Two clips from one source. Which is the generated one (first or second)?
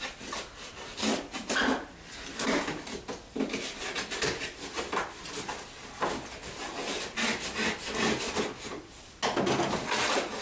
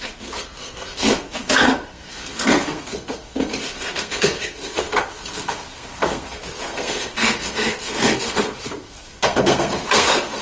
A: second